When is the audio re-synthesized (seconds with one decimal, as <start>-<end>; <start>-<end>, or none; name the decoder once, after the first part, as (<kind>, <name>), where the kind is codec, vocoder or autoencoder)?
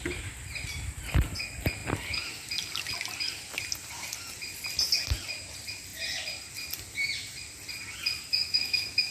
8.4-9.1 (autoencoder, DAC-VAE)